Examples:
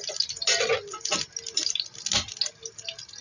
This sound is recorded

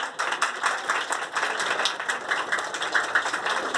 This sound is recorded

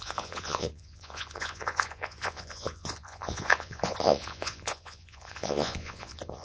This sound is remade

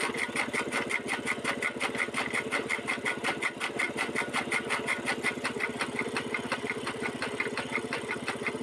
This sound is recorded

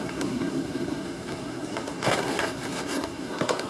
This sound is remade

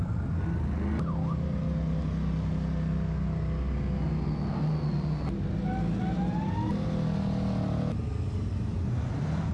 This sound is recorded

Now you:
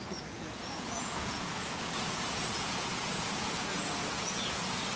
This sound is remade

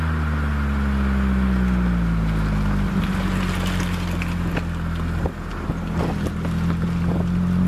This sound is recorded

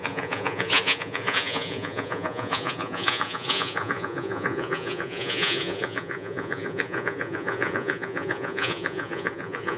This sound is remade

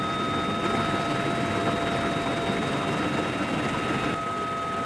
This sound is recorded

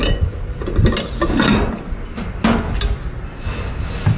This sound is recorded